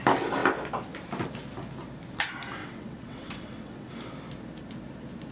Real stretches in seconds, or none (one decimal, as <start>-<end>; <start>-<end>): 0.0-2.6; 3.9-5.3